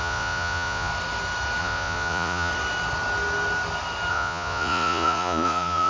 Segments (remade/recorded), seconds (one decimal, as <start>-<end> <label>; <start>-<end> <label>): 0.0-0.9 remade; 0.9-1.6 recorded; 1.6-2.5 remade; 2.5-4.1 recorded; 4.1-5.9 remade